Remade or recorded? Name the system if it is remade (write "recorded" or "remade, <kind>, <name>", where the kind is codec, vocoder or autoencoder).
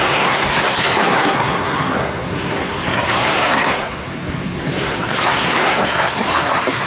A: remade, codec, SNAC